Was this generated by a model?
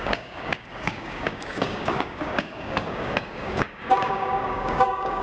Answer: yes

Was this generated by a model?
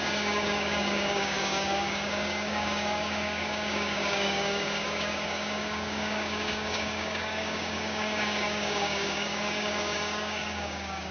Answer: yes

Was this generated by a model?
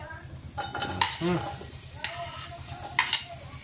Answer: no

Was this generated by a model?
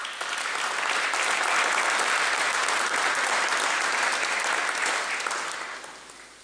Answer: no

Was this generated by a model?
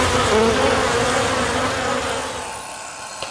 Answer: no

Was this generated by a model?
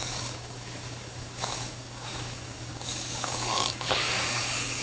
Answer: yes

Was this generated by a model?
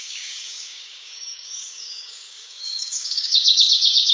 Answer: yes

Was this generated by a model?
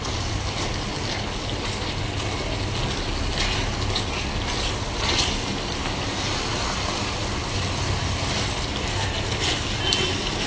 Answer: no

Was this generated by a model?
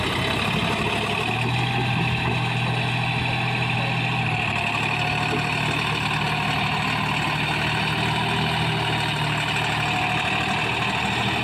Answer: no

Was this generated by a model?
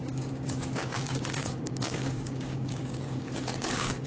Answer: yes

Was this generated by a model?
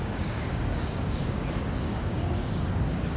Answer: yes